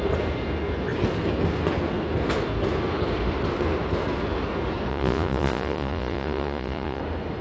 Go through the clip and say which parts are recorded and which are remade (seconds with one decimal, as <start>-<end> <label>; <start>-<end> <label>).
0.0-4.9 recorded; 4.9-7.0 remade; 7.0-7.4 recorded